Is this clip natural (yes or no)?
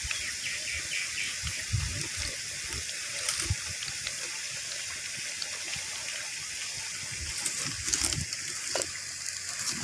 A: yes